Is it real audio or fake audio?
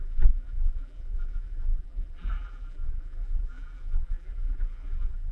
fake